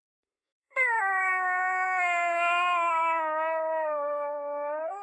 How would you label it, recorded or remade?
remade